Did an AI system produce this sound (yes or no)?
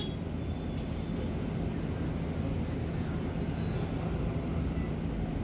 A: no